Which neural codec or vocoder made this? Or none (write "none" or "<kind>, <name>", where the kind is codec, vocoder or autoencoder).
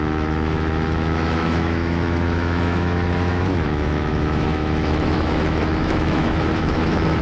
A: autoencoder, DAC-VAE